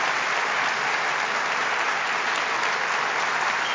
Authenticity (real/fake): real